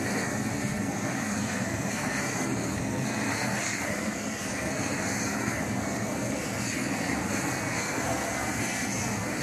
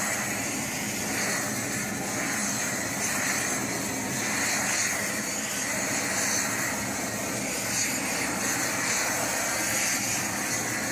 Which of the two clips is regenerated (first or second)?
first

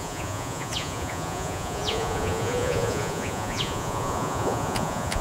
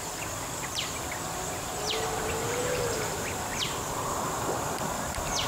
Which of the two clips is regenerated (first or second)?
first